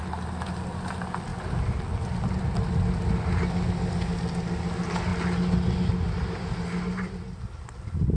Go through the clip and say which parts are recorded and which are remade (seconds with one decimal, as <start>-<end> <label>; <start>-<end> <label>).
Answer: 0.0-8.2 recorded